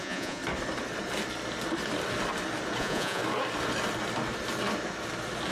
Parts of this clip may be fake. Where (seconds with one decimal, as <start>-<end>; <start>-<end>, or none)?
0.0-0.4; 2.8-3.2